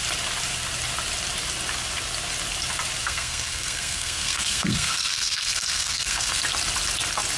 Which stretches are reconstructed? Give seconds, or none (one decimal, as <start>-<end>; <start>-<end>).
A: 3.0-6.4